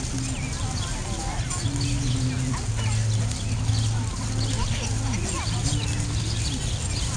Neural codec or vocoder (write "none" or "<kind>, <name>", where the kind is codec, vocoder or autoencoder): none